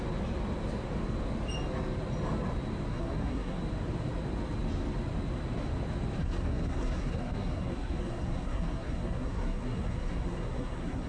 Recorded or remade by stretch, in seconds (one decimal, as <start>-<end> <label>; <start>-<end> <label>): 0.0-2.9 recorded; 2.9-3.6 remade; 3.6-6.2 recorded; 6.2-11.1 remade